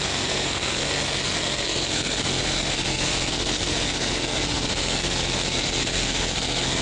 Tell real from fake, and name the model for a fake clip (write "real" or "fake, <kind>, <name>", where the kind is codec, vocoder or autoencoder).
fake, codec, SNAC